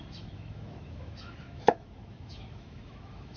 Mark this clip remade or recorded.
remade